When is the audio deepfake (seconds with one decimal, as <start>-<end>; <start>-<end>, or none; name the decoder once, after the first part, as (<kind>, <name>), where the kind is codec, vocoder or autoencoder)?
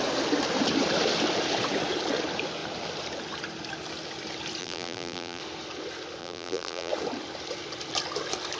4.6-5.4 (vocoder, BigVGAN v2); 6.2-6.9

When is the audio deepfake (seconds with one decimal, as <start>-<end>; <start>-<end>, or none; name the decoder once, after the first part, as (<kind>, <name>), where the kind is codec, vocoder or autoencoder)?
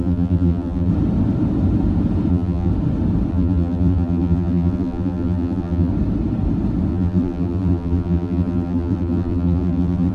0.0-0.9 (vocoder, BigVGAN v2); 2.3-2.7; 3.3-5.9; 6.9-10.1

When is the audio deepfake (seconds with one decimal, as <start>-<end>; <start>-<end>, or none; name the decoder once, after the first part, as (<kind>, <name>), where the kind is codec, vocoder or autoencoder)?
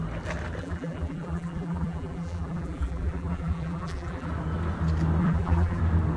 0.6-4.3 (vocoder, BigVGAN v2); 5.2-5.8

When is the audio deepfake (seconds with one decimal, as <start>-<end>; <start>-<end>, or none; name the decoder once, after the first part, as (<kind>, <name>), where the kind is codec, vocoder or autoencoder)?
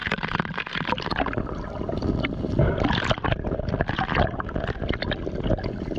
none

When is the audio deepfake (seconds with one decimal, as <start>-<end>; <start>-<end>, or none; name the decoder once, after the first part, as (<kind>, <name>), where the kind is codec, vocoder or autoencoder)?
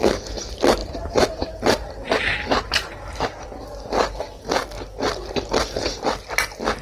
0.8-3.2 (vocoder, BigVGAN v2)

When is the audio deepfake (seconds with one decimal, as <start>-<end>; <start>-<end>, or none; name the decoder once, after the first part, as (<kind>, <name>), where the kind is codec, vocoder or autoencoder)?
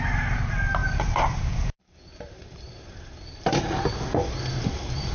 0.8-3.9 (vocoder, BigVGAN v2)